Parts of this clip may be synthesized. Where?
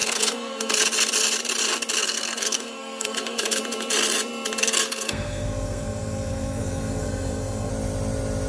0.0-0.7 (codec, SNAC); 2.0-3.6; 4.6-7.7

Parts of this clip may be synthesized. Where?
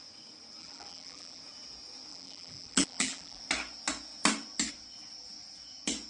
0.6-1.4 (vocoder, BigVGAN v2); 2.1-3.4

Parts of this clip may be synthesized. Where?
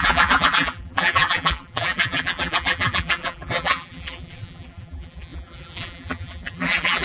0.0-7.0 (vocoder, BigVGAN v2)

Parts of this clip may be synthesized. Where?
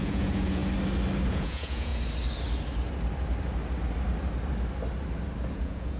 0.0-0.6 (vocoder, Vocos); 1.3-1.9; 5.5-6.0